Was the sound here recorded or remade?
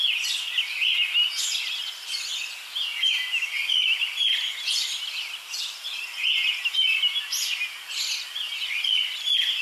recorded